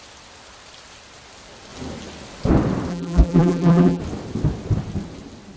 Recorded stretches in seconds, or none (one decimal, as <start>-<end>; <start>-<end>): 0.0-2.9; 4.0-5.6